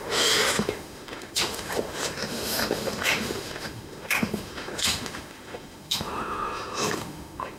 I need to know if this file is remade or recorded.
remade